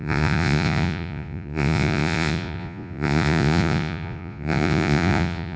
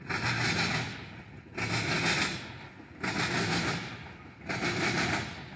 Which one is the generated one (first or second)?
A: first